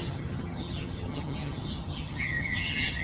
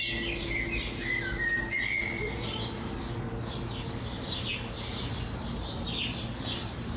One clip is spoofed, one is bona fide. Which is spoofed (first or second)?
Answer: first